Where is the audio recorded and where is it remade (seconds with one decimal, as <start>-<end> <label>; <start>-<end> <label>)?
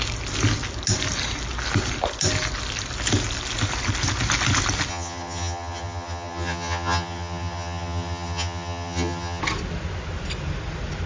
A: 0.0-4.9 recorded; 4.9-9.4 remade; 9.4-11.1 recorded